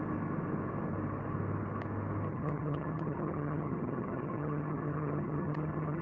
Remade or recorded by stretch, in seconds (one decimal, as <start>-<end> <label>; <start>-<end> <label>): 0.0-2.3 recorded; 2.3-6.0 remade

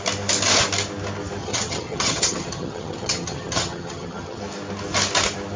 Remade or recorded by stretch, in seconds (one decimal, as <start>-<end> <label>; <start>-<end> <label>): 0.0-1.4 recorded; 1.4-4.4 remade; 4.4-5.6 recorded

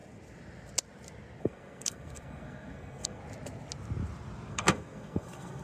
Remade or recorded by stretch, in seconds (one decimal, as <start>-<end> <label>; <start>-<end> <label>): 0.0-1.4 recorded; 1.4-3.2 remade; 3.2-4.5 recorded; 4.5-5.6 remade

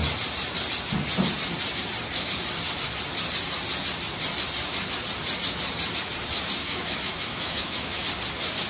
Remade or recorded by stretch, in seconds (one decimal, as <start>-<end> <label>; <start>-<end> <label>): 0.0-6.6 recorded; 6.6-8.0 remade; 8.0-8.7 recorded

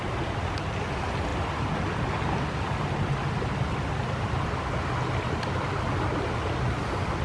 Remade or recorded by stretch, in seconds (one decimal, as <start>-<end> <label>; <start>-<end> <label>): 0.0-7.2 recorded

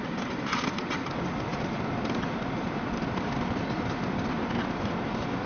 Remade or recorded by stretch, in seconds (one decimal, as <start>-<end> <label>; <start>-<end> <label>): 0.0-5.5 recorded

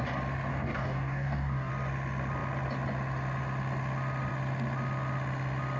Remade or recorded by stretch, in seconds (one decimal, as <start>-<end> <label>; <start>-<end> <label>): 0.0-0.5 recorded; 0.5-1.7 remade; 1.7-5.8 recorded